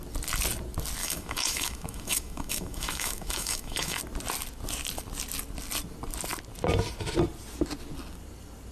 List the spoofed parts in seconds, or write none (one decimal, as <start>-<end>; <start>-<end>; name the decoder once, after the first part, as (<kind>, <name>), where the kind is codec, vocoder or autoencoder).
1.0-4.0 (autoencoder, DAC-VAE)